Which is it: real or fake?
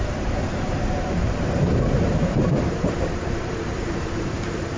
fake